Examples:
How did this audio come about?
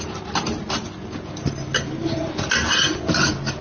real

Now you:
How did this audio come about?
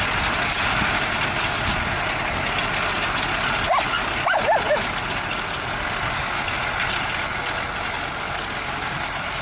real